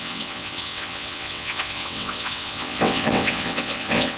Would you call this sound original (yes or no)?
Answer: no